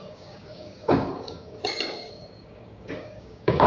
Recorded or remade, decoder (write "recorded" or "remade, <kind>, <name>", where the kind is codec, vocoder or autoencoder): remade, codec, DAC